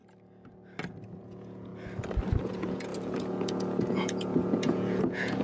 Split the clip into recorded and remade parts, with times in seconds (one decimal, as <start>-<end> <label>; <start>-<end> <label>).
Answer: 0.0-1.2 recorded; 1.2-1.7 remade; 1.7-2.4 recorded; 2.4-5.4 remade